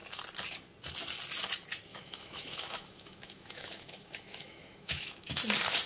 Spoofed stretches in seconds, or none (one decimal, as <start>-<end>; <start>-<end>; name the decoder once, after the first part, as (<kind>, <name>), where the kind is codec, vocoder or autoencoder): 1.9-5.4 (autoencoder, DAC-VAE)